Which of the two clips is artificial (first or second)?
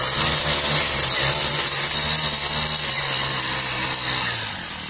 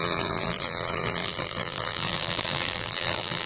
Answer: second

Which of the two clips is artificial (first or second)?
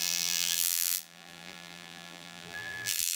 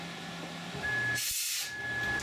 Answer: first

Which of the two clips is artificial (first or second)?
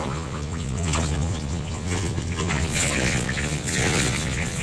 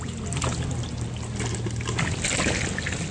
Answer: first